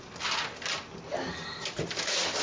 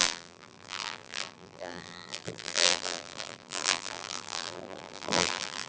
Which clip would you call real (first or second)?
first